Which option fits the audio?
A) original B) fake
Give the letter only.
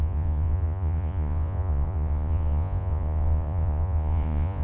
B